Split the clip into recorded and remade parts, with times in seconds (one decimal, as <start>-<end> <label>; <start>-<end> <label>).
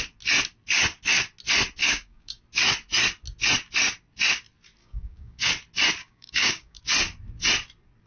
0.0-1.8 recorded; 1.8-2.4 remade; 2.4-4.8 recorded; 4.8-5.5 remade; 5.5-6.0 recorded; 6.0-6.8 remade; 6.8-8.1 recorded